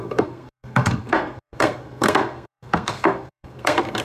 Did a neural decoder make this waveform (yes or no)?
yes